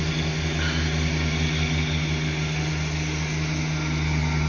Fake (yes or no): no